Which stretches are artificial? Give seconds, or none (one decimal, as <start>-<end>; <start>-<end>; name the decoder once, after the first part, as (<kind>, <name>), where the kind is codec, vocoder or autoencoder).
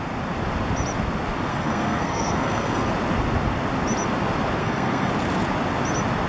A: 1.5-2.9 (codec, SNAC); 4.6-5.1